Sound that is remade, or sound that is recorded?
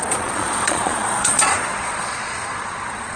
remade